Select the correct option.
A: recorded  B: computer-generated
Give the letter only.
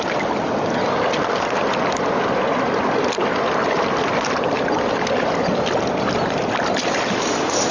A